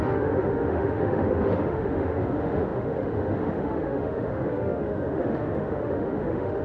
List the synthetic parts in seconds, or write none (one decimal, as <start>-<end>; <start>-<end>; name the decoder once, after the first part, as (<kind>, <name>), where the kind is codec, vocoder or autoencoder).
0.0-6.6 (autoencoder, DAC-VAE)